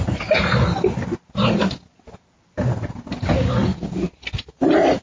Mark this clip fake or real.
real